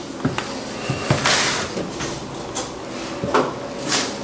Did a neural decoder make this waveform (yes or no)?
no